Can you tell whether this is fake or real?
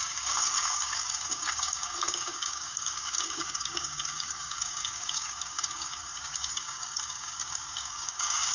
fake